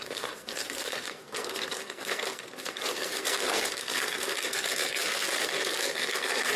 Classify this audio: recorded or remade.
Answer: remade